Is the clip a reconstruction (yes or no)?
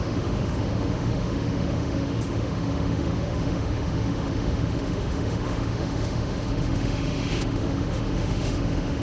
yes